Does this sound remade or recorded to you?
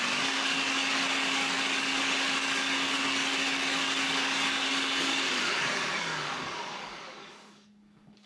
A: remade